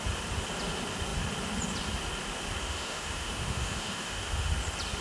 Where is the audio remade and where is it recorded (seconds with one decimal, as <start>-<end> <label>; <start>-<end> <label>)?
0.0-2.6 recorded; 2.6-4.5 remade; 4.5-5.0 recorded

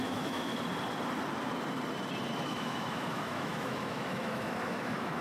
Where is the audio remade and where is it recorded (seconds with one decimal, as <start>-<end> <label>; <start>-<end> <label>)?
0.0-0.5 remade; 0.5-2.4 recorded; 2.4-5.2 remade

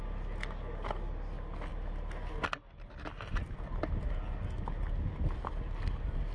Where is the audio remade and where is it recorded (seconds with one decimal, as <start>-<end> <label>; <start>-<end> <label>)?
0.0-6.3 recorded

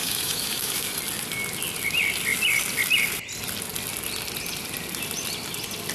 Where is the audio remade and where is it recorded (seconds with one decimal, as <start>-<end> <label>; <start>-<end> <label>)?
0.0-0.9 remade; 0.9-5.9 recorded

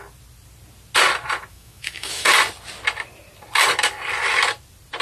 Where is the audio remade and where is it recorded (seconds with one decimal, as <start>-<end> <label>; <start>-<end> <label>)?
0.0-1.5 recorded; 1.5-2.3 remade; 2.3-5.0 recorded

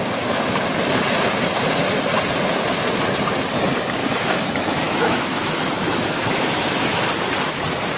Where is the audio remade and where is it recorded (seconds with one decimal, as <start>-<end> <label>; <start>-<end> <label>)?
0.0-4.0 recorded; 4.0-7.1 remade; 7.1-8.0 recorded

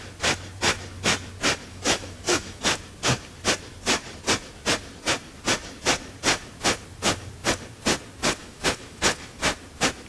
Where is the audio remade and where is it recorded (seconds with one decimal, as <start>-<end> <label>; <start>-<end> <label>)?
0.0-1.7 recorded; 1.7-2.6 remade; 2.6-8.4 recorded; 8.4-9.4 remade; 9.4-10.1 recorded

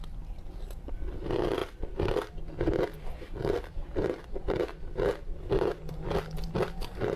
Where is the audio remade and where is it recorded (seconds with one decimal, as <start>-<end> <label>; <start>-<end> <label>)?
0.0-7.2 recorded